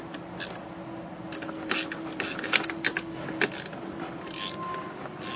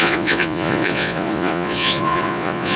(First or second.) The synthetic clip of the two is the second